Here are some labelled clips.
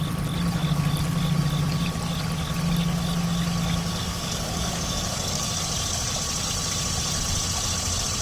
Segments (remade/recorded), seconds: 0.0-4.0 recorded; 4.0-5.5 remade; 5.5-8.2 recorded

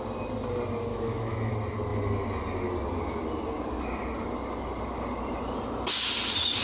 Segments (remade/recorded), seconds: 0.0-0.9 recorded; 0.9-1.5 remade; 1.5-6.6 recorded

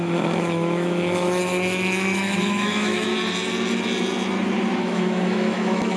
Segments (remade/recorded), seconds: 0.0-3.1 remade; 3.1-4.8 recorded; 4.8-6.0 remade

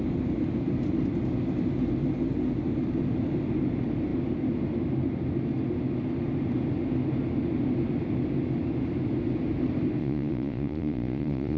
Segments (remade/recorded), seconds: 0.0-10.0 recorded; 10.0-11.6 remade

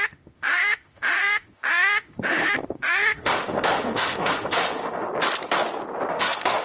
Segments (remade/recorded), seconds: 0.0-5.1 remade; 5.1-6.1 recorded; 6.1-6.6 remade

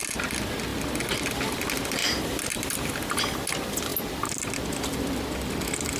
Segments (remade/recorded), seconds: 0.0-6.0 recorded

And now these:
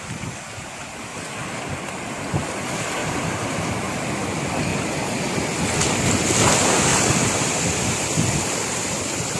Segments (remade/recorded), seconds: 0.0-3.0 recorded; 3.0-3.7 remade; 3.7-6.9 recorded; 6.9-7.6 remade; 7.6-9.4 recorded

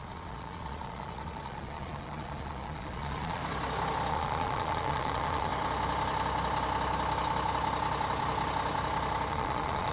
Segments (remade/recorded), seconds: 0.0-3.4 remade; 3.4-4.1 recorded; 4.1-5.5 remade; 5.5-9.3 recorded; 9.3-9.9 remade